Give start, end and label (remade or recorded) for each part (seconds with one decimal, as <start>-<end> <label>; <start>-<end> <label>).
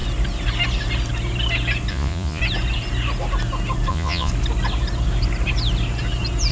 0.0-1.9 recorded; 1.9-2.4 remade; 2.4-3.9 recorded; 3.9-4.3 remade; 4.3-6.5 recorded